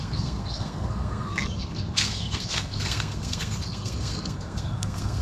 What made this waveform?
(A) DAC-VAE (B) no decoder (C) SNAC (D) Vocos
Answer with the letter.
C